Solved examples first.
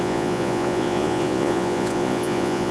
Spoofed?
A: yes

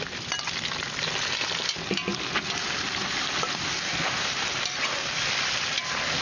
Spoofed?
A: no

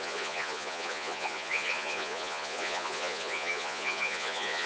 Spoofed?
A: yes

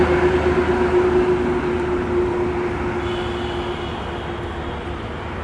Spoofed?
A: no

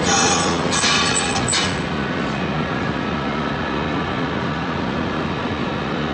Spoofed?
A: yes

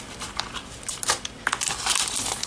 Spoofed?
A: no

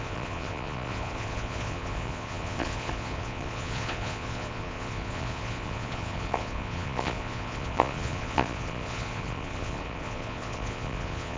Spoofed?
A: yes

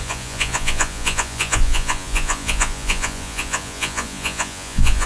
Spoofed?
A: yes